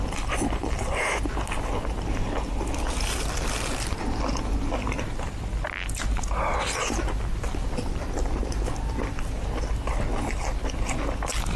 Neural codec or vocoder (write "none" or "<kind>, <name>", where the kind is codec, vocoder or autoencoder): none